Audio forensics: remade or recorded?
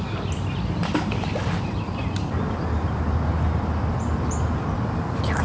recorded